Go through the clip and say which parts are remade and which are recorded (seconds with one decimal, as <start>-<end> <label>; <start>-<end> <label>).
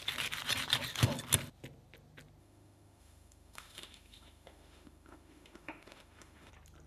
0.0-2.4 recorded; 2.4-6.5 remade; 6.5-6.9 recorded